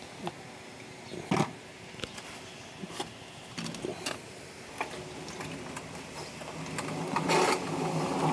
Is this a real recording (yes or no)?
yes